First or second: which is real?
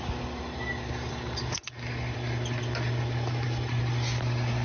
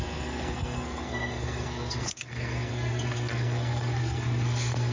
first